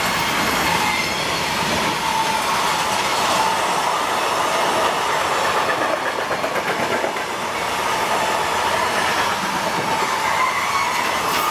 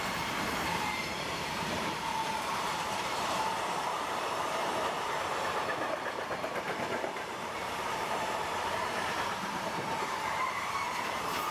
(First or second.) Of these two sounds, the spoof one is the second